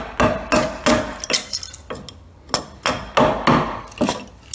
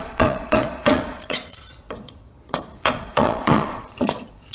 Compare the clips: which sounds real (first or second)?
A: first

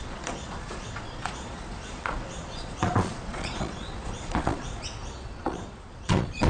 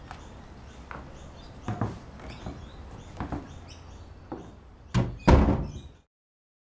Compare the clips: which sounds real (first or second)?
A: second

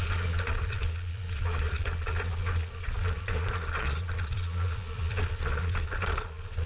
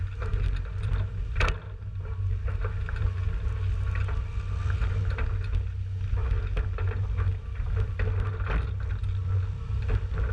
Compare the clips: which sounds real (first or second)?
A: second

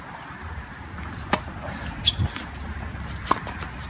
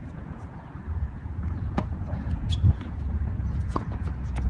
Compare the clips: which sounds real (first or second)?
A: first